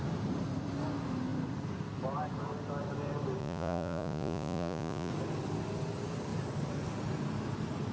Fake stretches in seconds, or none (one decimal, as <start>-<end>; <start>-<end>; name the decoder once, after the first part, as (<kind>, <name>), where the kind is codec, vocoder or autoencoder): 3.4-5.1 (vocoder, Vocos)

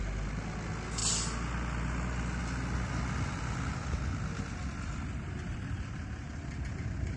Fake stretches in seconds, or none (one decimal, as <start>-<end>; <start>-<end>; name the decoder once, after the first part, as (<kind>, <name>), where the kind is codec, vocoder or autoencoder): none

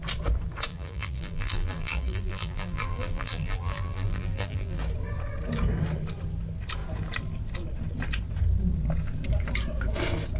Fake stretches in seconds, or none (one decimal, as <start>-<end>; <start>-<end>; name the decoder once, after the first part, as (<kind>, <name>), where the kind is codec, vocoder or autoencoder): 0.7-4.8 (vocoder, BigVGAN v2)

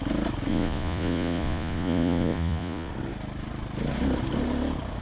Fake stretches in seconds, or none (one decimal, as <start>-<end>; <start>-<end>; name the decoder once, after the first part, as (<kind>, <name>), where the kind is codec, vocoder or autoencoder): 0.5-2.9 (vocoder, Vocos)